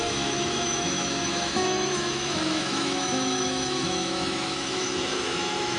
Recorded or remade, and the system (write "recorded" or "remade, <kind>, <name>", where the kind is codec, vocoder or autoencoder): remade, autoencoder, DAC-VAE